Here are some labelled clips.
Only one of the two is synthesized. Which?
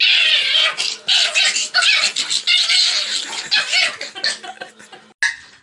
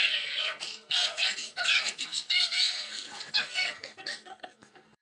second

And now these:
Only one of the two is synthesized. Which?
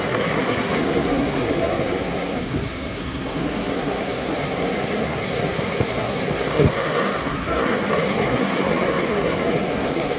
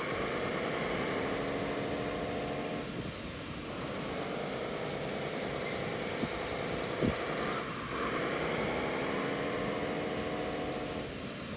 first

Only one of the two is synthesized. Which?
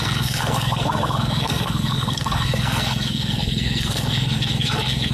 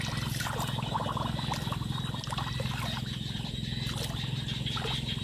first